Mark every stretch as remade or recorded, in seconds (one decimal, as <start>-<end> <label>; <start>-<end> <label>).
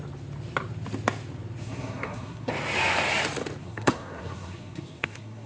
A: 0.0-1.6 recorded; 1.6-2.5 remade; 2.5-3.6 recorded; 3.6-5.5 remade